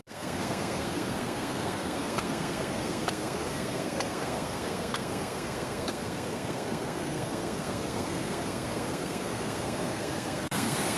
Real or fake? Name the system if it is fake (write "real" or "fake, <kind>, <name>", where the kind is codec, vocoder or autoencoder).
fake, codec, SNAC